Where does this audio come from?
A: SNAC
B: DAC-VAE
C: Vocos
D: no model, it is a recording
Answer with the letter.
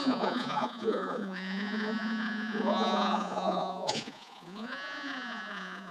C